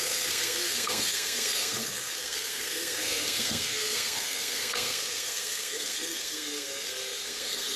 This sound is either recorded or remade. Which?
remade